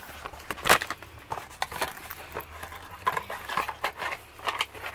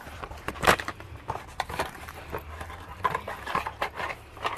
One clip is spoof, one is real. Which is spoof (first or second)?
second